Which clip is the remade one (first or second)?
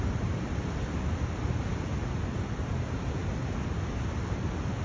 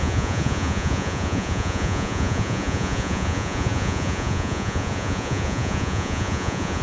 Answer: second